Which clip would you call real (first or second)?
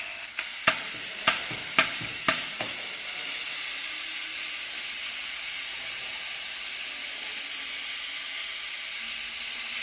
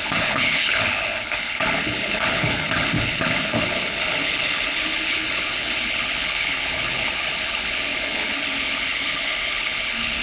first